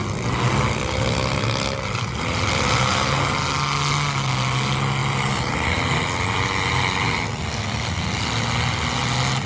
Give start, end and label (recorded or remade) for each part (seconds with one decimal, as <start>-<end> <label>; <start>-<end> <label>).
0.0-9.5 recorded